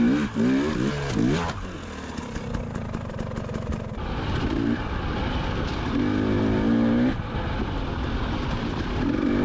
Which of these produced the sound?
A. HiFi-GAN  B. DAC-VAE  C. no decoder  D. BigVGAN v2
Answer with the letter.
C